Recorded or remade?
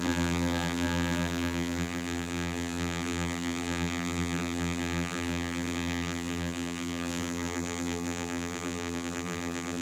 remade